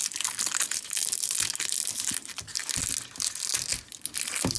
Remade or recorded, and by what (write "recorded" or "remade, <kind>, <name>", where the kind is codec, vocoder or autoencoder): recorded